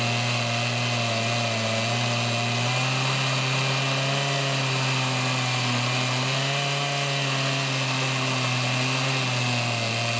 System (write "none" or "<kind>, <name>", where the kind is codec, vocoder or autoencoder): none